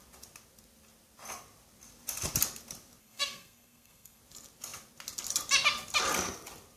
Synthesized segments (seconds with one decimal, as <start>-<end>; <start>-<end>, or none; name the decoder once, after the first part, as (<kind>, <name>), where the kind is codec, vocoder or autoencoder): 3.0-4.2 (codec, SNAC)